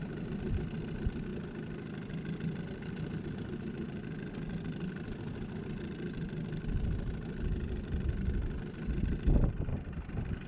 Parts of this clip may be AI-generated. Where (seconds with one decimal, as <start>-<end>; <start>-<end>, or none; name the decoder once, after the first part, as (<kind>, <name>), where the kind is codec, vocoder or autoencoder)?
none